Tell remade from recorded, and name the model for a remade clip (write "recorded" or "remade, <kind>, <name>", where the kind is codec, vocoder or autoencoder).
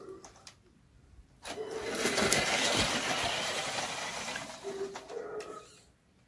recorded